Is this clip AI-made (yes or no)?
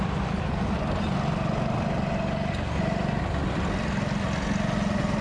no